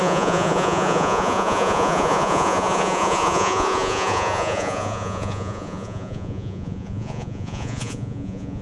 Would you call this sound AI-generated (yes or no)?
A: yes